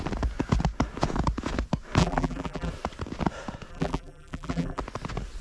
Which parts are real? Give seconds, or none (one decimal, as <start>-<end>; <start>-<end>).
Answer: 0.0-2.0; 2.7-3.7; 4.8-5.4